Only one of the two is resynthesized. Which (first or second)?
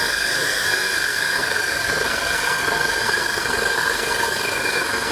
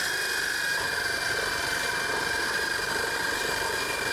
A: first